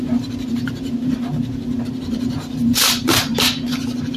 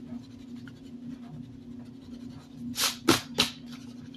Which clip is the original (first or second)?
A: second